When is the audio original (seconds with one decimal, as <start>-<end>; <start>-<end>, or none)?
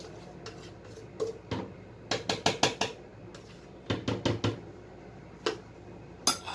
0.0-6.5